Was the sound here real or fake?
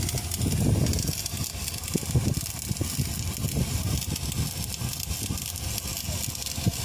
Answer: real